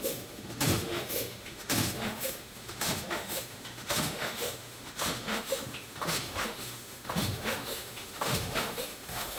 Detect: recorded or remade remade